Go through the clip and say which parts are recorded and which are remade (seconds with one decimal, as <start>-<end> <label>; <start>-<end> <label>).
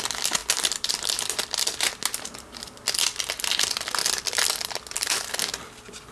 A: 0.0-0.4 recorded; 0.4-1.5 remade; 1.5-4.0 recorded; 4.0-5.3 remade; 5.3-6.1 recorded